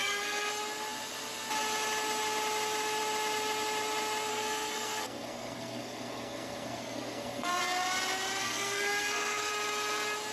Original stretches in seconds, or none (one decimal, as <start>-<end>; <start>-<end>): 0.5-4.3; 7.6-8.4; 9.5-10.3